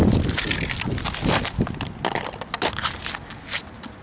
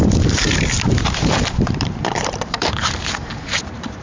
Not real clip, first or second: second